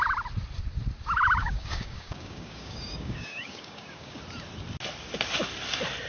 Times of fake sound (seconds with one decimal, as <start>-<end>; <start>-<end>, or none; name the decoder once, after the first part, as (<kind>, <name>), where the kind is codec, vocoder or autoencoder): 1.4-4.2 (codec, DAC)